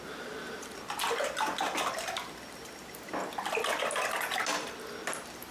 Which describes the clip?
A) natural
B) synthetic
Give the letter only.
A